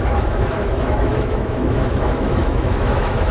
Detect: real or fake fake